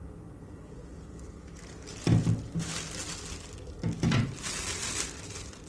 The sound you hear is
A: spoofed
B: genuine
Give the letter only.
B